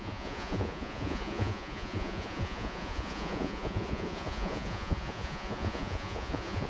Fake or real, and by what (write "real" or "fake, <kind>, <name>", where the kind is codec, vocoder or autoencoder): fake, vocoder, Vocos